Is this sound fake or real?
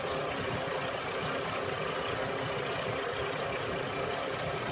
real